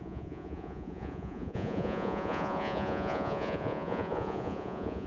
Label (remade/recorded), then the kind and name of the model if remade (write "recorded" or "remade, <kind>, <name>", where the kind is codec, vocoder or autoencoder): remade, vocoder, Vocos